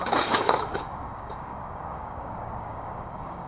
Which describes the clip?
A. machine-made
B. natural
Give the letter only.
A